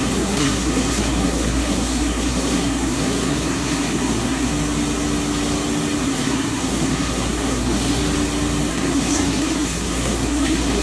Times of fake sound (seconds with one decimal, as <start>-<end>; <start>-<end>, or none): 0.0-4.5; 6.0-8.0; 8.7-10.8

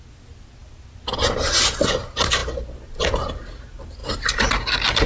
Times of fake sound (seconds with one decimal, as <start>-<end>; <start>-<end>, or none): none

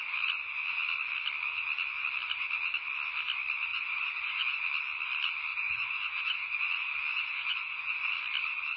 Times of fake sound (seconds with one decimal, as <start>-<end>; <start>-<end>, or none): 3.7-4.6; 5.5-6.6; 7.1-8.1

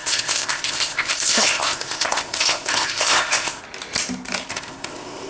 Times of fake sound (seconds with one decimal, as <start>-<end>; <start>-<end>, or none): 0.0-3.6; 4.5-5.3

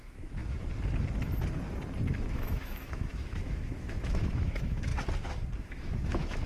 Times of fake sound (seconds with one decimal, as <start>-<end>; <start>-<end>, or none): 0.0-0.4; 2.1-4.9; 5.6-6.5

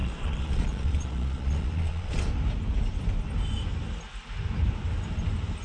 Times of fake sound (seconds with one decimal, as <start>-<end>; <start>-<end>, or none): 0.0-2.2

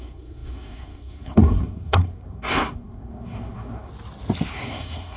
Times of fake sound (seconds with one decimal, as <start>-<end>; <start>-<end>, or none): 0.0-3.9; 4.5-5.2